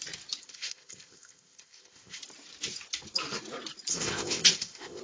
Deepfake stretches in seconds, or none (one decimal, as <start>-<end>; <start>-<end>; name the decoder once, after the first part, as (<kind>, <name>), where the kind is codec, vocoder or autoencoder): 0.4-2.2 (codec, ZipCodec); 3.9-5.0